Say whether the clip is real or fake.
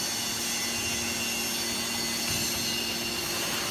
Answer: real